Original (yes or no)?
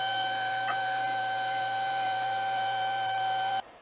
no